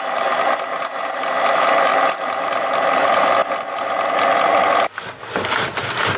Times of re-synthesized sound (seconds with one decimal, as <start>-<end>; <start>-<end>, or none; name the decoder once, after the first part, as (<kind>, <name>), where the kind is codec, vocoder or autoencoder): none